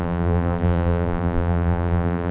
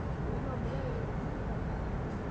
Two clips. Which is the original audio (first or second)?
second